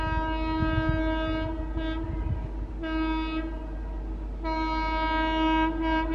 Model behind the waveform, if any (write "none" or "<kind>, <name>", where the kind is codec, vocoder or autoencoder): none